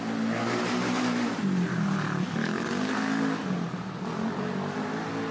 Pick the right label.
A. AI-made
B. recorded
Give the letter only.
B